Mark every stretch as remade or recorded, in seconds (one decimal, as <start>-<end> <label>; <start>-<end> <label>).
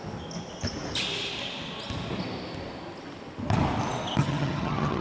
0.0-4.2 recorded; 4.2-5.0 remade